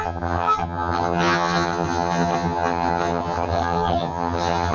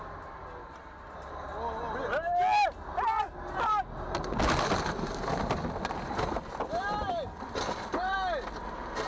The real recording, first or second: second